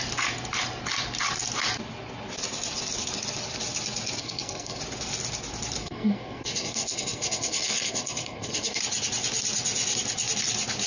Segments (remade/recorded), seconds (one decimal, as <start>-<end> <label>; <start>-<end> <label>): 0.0-4.2 recorded; 4.2-4.8 remade; 4.8-5.8 recorded; 5.8-8.8 remade; 8.8-10.9 recorded